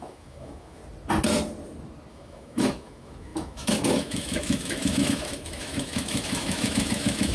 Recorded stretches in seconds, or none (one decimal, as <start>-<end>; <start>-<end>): 0.8-2.1

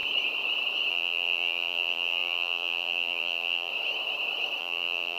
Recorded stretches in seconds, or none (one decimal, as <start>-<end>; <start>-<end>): 0.0-0.9; 3.7-4.6

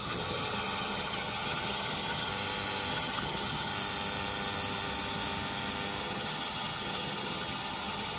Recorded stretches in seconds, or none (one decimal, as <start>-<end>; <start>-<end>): 2.3-2.9; 3.7-6.0

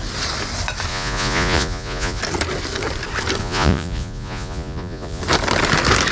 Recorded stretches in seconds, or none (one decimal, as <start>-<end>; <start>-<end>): 0.0-0.9; 2.2-3.4; 5.2-6.1

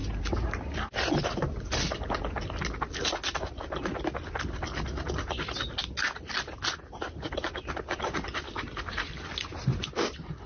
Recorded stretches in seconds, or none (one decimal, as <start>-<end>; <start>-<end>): 0.0-10.5